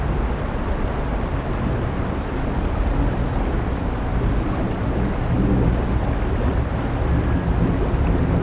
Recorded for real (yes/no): yes